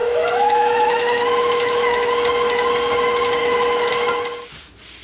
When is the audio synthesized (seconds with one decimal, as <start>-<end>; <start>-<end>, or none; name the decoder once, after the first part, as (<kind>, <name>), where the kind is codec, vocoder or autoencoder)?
0.0-2.1 (autoencoder, DAC-VAE); 3.4-3.9